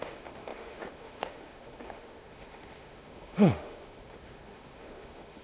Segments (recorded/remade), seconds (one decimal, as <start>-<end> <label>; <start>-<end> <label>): 0.0-5.4 remade